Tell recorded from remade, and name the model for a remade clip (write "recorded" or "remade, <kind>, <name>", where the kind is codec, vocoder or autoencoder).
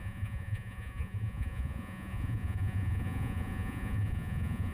remade, vocoder, Vocos